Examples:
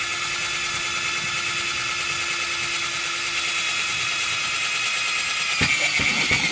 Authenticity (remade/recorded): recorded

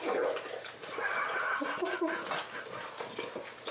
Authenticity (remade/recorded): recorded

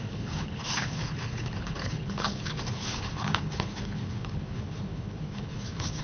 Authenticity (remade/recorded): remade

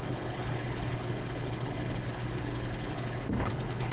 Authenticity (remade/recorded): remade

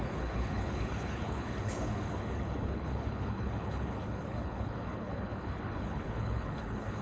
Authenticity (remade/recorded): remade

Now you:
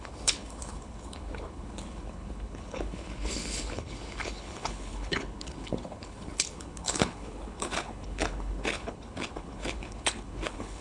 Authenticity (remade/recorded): remade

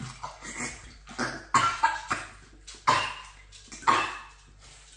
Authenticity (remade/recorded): recorded